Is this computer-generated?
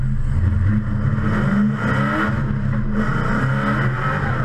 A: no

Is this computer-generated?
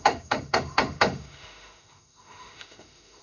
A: yes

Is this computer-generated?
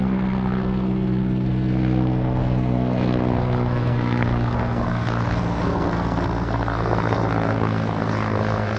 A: yes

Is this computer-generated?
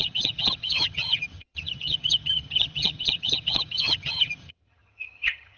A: yes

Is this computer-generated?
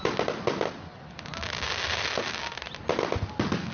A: no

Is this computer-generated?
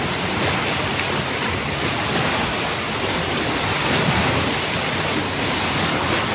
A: no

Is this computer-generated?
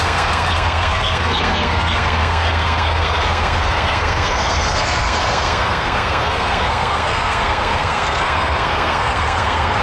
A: yes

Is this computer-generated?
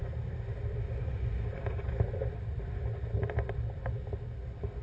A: no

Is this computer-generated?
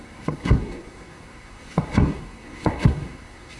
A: yes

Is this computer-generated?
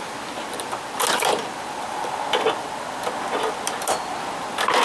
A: no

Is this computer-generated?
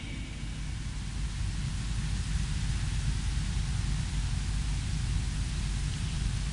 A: no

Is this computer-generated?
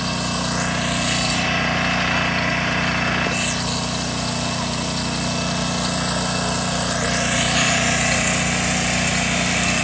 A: no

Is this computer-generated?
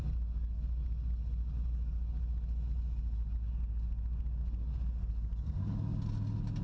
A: no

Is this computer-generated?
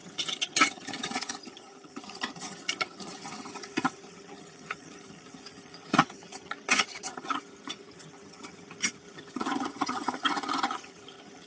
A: yes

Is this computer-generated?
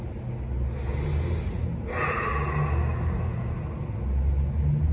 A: no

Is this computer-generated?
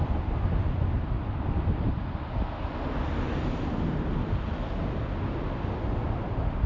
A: no